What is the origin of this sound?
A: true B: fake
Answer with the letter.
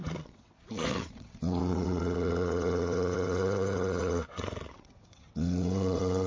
B